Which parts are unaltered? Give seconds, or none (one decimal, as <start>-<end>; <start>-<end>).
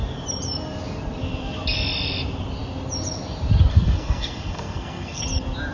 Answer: 0.0-3.7; 5.2-5.7